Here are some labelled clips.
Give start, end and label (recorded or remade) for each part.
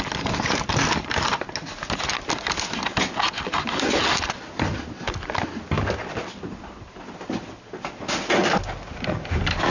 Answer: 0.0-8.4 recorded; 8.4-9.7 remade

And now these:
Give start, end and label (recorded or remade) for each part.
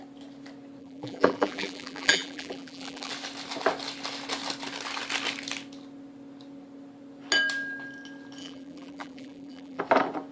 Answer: 0.0-0.8 recorded; 0.8-3.1 remade; 3.1-8.4 recorded; 8.4-9.8 remade; 9.8-10.3 recorded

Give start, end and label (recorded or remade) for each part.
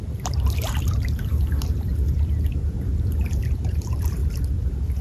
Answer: 0.0-1.9 remade; 1.9-3.4 recorded; 3.4-4.2 remade; 4.2-5.0 recorded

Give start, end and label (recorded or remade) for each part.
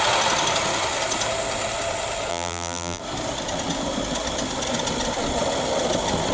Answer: 0.0-2.3 recorded; 2.3-3.0 remade; 3.0-6.3 recorded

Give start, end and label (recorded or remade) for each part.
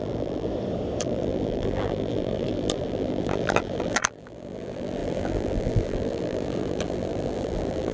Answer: 0.0-0.5 remade; 0.5-1.0 recorded; 1.0-7.9 remade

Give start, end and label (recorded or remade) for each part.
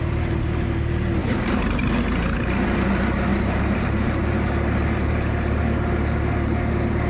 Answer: 0.0-1.2 recorded; 1.2-2.0 remade; 2.0-3.3 recorded; 3.3-5.6 remade; 5.6-7.1 recorded